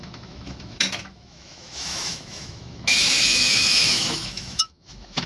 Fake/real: fake